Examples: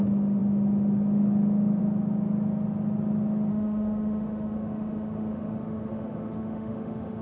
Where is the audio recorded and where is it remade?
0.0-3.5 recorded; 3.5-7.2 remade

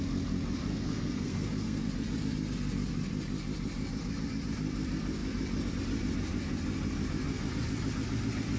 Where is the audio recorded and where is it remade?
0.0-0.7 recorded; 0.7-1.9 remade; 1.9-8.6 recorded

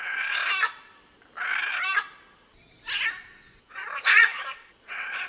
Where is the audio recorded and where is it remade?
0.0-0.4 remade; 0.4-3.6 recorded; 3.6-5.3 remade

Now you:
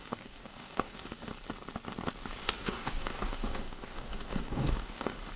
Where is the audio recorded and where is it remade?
0.0-1.3 remade; 1.3-2.4 recorded; 2.4-5.4 remade

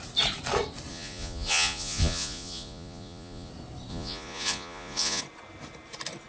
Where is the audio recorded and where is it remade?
0.0-0.9 recorded; 0.9-3.5 remade; 3.5-3.9 recorded; 3.9-5.2 remade; 5.2-6.3 recorded